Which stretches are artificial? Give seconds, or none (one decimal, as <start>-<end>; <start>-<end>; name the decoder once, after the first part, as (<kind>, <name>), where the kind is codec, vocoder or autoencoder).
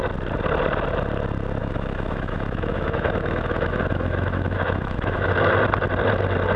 1.6-5.5 (autoencoder, DAC-VAE)